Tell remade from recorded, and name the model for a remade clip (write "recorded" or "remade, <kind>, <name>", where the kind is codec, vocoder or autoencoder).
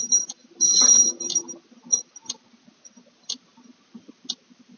recorded